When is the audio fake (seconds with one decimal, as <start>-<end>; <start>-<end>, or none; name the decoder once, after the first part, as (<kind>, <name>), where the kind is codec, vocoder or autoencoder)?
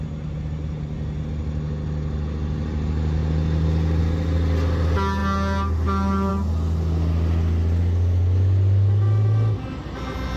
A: none